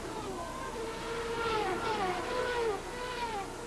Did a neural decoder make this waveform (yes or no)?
no